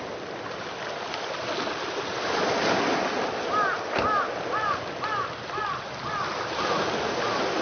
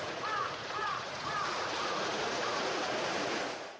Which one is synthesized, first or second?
second